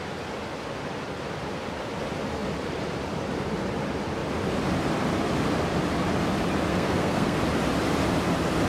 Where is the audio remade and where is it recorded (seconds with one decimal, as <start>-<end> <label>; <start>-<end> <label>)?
0.0-6.7 recorded; 6.7-7.4 remade; 7.4-8.7 recorded